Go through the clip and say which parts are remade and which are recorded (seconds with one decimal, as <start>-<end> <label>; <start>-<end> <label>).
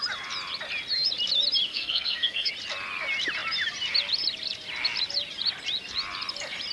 0.0-1.7 recorded; 1.7-2.5 remade; 2.5-6.7 recorded